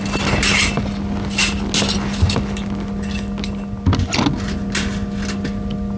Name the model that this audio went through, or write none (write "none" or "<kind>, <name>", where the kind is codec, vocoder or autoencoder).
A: none